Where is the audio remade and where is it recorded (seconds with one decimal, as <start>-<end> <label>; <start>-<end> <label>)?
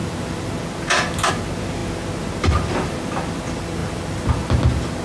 0.0-5.0 recorded